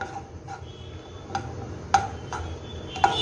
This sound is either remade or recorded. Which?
recorded